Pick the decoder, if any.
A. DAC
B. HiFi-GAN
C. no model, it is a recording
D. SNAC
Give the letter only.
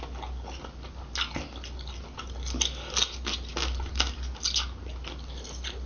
C